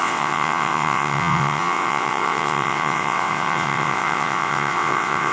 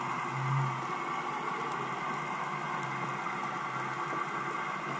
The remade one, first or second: first